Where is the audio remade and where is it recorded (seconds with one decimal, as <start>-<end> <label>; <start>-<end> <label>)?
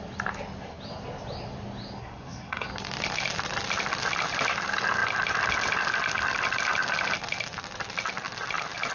0.0-2.0 recorded; 2.0-2.7 remade; 2.7-8.9 recorded